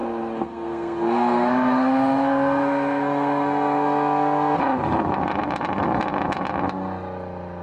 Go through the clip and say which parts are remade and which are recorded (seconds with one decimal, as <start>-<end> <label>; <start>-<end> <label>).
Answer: 0.0-4.6 remade; 4.6-7.6 recorded

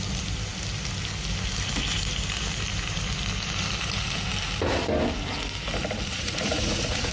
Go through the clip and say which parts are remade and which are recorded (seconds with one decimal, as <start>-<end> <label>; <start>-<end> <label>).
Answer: 0.0-6.1 recorded; 6.1-7.1 remade

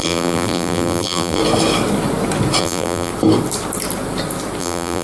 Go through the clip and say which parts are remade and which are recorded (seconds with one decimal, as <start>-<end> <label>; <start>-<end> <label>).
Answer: 0.0-1.4 remade; 1.4-2.6 recorded; 2.6-3.1 remade; 3.1-4.6 recorded; 4.6-5.0 remade

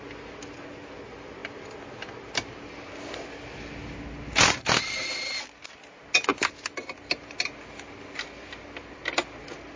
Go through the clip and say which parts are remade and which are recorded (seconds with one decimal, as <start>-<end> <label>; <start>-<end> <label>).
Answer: 0.0-9.8 recorded

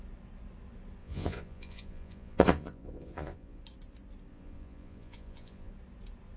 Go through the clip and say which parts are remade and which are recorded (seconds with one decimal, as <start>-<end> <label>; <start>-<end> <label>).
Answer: 0.0-1.0 recorded; 1.0-3.6 remade; 3.6-4.3 recorded; 4.3-5.7 remade; 5.7-6.4 recorded

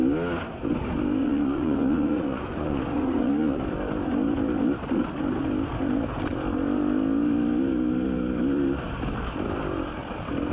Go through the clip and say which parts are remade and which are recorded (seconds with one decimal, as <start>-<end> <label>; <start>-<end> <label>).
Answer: 0.0-1.2 recorded; 1.2-3.6 remade; 3.6-10.5 recorded